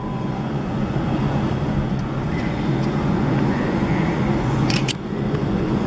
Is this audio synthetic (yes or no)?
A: yes